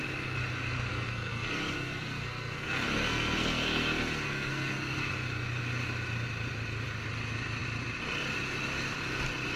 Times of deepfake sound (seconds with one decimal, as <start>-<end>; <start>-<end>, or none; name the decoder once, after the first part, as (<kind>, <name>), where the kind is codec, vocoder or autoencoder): 0.9-5.1 (codec, SNAC)